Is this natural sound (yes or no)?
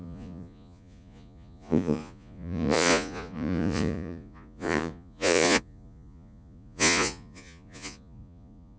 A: no